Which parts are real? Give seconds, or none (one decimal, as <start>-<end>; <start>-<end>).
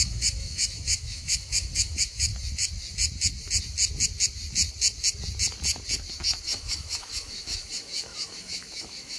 2.3-6.4